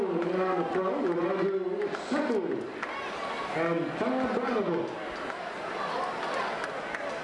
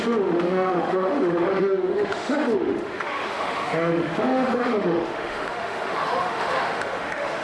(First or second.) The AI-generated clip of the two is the second